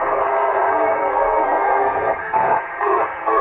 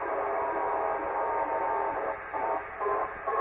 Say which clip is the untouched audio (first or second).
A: second